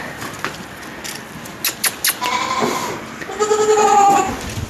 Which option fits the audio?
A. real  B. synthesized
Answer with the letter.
A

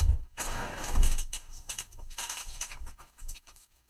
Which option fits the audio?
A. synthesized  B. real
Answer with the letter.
A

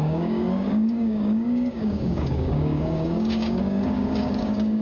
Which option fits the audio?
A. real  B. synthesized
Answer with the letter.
B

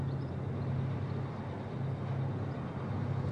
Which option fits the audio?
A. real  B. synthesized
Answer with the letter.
A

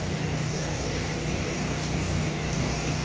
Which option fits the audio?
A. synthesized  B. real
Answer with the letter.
A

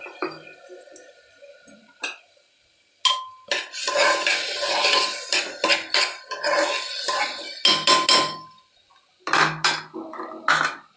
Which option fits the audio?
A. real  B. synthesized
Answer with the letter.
A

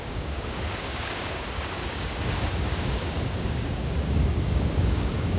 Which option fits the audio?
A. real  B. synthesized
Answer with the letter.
B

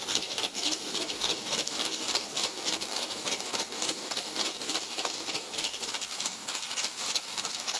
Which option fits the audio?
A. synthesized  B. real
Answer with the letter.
A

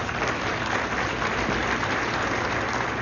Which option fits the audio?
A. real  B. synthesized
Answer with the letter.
A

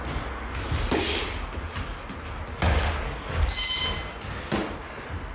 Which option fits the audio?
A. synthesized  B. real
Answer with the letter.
B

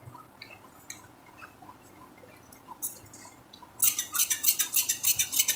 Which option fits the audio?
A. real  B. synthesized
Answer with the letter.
A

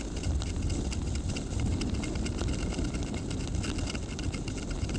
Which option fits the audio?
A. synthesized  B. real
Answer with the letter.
B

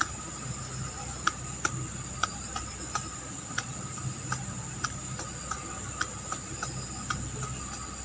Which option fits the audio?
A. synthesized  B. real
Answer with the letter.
B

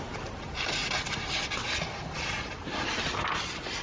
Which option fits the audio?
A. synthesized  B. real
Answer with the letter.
B